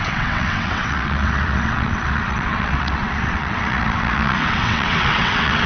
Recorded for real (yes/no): no